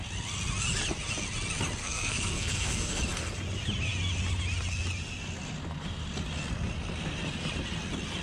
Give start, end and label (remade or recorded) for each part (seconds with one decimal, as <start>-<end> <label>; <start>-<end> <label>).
0.0-1.8 recorded; 1.8-3.0 remade; 3.0-8.2 recorded